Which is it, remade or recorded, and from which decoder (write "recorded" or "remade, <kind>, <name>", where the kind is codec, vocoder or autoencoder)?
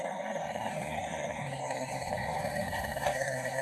remade, codec, SNAC